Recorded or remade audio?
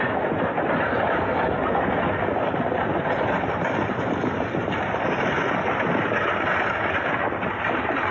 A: recorded